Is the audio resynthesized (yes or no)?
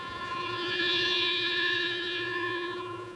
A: yes